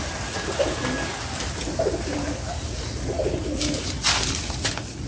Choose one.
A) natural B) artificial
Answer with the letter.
A